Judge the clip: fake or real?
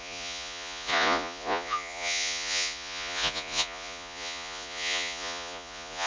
fake